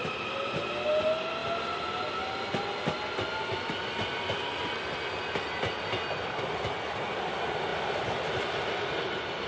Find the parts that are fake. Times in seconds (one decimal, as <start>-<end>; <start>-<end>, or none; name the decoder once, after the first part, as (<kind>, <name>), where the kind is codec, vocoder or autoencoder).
none